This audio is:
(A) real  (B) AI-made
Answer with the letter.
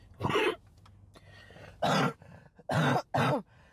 A